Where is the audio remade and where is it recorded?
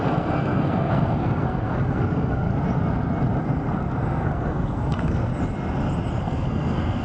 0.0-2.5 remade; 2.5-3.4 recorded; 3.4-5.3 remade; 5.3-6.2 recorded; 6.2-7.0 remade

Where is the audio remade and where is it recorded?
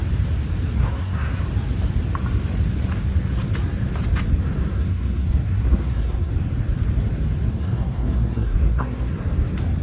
0.0-0.8 recorded; 0.8-1.4 remade; 1.4-4.7 recorded; 4.7-6.3 remade; 6.3-7.5 recorded; 7.5-9.1 remade; 9.1-9.8 recorded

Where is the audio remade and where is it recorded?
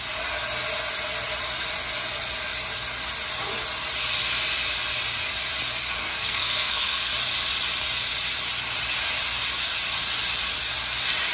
0.0-6.0 recorded; 6.0-7.1 remade; 7.1-11.3 recorded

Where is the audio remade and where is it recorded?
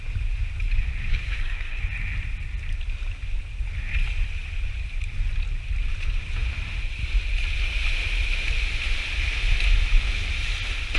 0.0-1.1 recorded; 1.1-1.8 remade; 1.8-11.0 recorded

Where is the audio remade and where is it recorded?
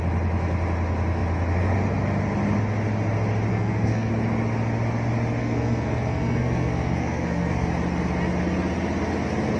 0.0-3.5 recorded; 3.5-4.1 remade; 4.1-5.4 recorded; 5.4-7.7 remade; 7.7-9.6 recorded